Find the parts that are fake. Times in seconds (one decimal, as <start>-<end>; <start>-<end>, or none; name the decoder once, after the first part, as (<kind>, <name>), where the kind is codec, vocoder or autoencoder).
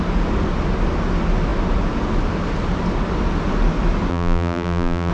4.1-5.1 (vocoder, BigVGAN v2)